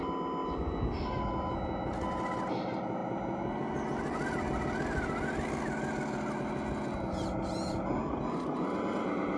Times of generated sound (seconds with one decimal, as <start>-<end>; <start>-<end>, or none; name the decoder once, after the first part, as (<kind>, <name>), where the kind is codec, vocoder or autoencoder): none